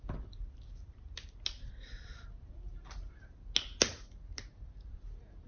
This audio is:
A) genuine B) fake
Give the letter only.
A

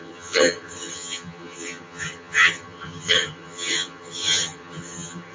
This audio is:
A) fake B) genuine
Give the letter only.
A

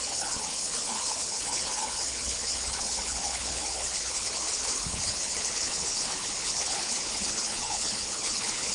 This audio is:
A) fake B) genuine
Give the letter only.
A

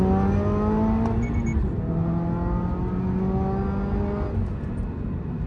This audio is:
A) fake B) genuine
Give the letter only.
B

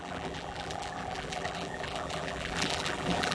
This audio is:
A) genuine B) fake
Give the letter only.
B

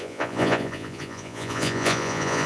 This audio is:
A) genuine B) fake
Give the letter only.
B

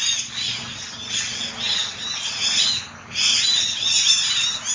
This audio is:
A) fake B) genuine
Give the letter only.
B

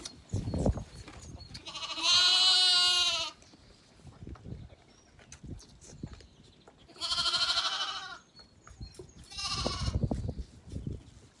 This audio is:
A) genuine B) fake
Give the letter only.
A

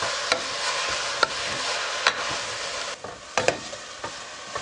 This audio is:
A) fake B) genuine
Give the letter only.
B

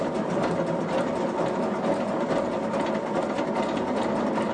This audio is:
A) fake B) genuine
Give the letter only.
B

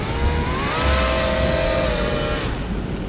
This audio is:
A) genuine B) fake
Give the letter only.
A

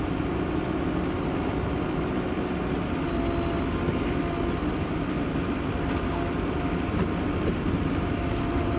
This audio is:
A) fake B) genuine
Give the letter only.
B